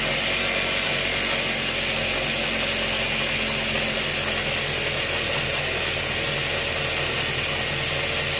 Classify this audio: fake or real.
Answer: real